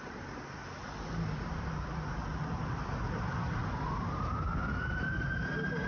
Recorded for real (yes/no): yes